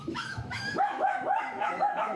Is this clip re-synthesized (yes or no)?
yes